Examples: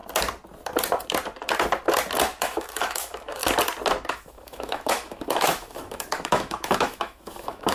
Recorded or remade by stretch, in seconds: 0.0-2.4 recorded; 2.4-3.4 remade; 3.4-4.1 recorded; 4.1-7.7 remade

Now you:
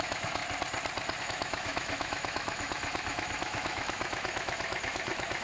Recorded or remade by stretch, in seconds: 0.0-0.4 remade; 0.4-1.2 recorded; 1.2-5.4 remade